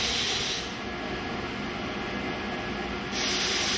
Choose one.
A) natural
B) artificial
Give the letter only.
A